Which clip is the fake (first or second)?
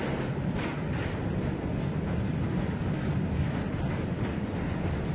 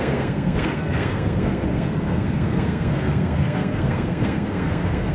second